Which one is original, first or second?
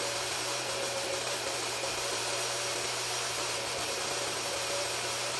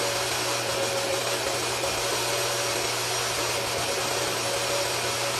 second